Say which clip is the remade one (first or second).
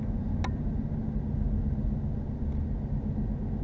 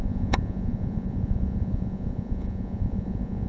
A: second